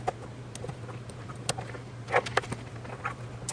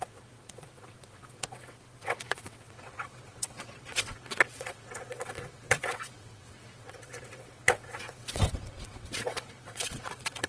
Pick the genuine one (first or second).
first